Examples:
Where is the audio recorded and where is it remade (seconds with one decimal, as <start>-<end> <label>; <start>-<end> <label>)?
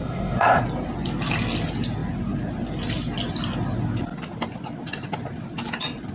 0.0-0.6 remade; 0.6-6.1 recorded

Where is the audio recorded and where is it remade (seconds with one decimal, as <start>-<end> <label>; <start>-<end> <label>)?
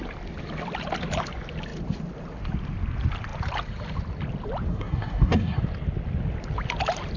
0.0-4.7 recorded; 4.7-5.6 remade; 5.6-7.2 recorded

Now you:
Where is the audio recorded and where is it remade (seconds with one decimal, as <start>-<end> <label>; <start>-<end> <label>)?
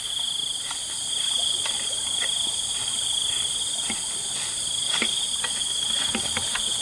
0.0-4.8 recorded; 4.8-5.4 remade; 5.4-6.8 recorded